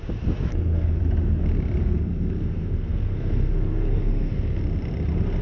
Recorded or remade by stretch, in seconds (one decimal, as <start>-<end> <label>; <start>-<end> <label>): 0.0-0.5 recorded; 0.5-1.0 remade; 1.0-1.8 recorded; 1.8-4.6 remade; 4.6-5.4 recorded